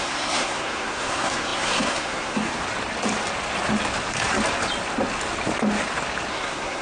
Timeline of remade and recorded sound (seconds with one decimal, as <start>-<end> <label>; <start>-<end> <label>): 0.0-2.6 remade; 2.6-6.3 recorded; 6.3-6.8 remade